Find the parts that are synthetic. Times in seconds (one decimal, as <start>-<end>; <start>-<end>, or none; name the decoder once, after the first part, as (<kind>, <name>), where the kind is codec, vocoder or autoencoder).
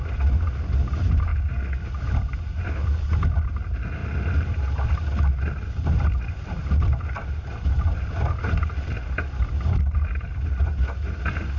none